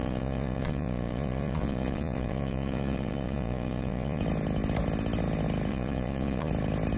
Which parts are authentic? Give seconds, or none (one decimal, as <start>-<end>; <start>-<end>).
4.2-5.7; 6.5-7.0

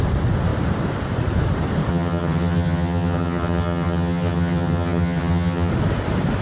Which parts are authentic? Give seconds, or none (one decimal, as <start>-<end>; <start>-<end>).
0.0-1.9; 5.7-6.4